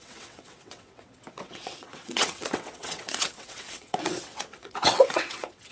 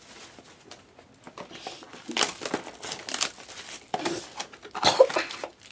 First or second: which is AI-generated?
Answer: first